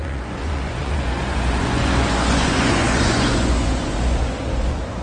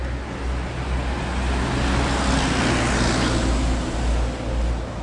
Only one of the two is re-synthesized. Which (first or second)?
first